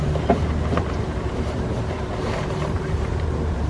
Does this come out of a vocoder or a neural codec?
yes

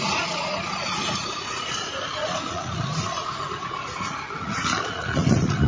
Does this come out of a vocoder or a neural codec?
yes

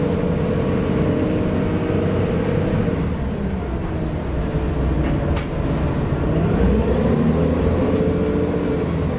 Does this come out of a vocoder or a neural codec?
no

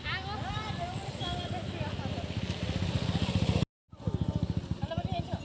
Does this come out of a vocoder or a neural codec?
no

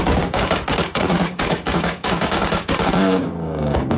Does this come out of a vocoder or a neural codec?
yes